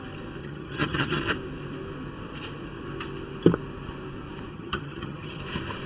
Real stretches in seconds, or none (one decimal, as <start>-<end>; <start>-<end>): 0.0-0.4; 1.2-4.5; 5.4-5.9

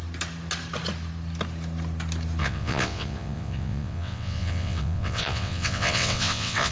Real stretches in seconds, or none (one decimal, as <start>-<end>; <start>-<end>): 0.0-2.4

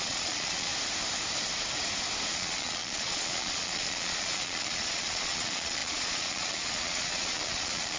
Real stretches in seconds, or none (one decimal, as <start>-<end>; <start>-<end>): 0.7-2.3